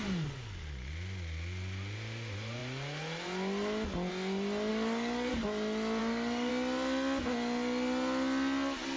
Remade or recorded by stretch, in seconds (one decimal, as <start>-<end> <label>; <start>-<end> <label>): 0.0-4.7 recorded; 4.7-5.3 remade; 5.3-6.0 recorded; 6.0-6.5 remade; 6.5-9.0 recorded